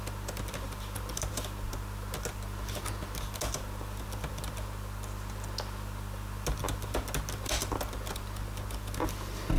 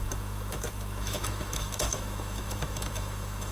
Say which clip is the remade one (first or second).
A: second